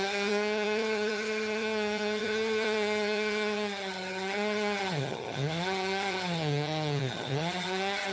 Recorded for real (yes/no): no